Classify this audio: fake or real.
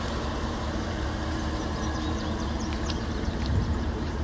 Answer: fake